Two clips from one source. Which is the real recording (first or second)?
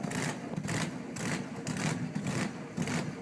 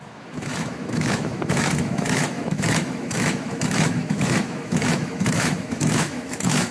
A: first